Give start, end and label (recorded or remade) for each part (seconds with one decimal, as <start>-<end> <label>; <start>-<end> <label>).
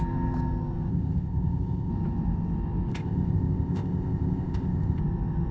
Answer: 0.0-0.9 recorded; 0.9-1.9 remade; 1.9-2.9 recorded; 2.9-5.0 remade; 5.0-5.5 recorded